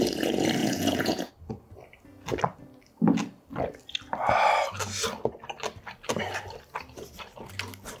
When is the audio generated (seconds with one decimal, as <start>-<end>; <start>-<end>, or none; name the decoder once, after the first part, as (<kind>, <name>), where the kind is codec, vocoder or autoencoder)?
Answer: 0.6-1.3 (vocoder, Vocos)